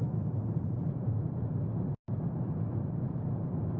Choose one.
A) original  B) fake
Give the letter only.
B